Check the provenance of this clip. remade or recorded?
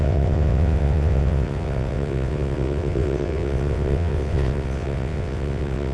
remade